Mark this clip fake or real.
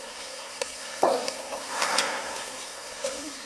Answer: fake